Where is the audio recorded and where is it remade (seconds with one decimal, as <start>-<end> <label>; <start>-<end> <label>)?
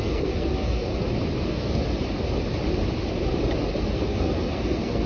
0.0-0.9 remade; 0.9-1.4 recorded; 1.4-1.8 remade; 1.8-3.8 recorded; 3.8-5.1 remade